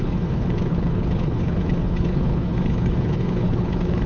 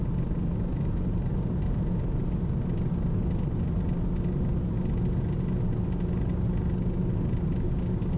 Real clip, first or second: second